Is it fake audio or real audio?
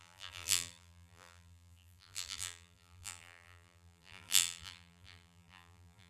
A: fake